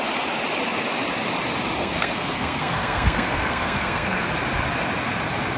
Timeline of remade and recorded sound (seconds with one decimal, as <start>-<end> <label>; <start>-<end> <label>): 0.0-1.8 recorded; 1.8-4.3 remade; 4.3-5.6 recorded